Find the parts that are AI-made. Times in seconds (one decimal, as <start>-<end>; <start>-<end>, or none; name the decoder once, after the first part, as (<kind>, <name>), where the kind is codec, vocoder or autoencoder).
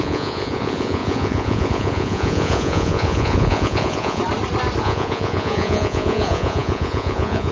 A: 0.0-4.2 (vocoder, Vocos); 4.8-7.5